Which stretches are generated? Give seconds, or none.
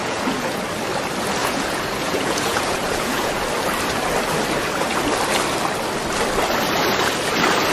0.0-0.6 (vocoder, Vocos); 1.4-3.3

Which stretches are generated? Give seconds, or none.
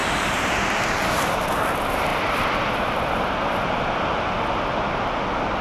0.0-1.4 (vocoder, BigVGAN v2)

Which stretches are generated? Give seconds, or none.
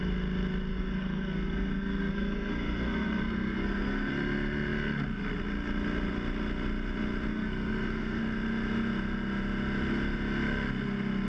0.7-4.1 (codec, SNAC); 7.3-8.2